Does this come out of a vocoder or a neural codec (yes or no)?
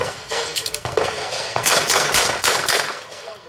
yes